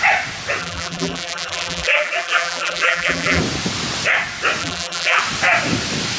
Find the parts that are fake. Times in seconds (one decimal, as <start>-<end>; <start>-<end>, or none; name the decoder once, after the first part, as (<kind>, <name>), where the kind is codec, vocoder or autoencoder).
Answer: 0.6-3.4 (vocoder, BigVGAN v2); 4.6-5.2